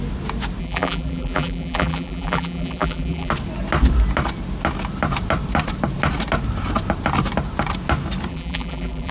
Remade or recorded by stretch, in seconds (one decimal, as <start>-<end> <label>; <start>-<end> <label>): 0.0-0.6 recorded; 0.6-3.3 remade; 3.3-8.3 recorded; 8.3-9.1 remade